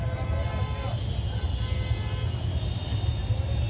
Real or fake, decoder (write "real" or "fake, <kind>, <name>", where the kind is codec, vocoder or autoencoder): real